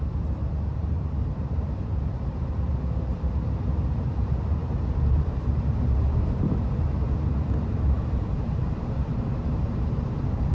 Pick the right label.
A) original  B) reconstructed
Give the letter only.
B